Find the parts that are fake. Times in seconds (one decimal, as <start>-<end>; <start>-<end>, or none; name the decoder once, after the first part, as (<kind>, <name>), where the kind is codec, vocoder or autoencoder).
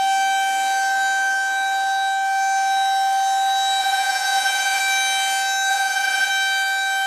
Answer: 3.8-4.8 (vocoder, Vocos); 5.7-6.3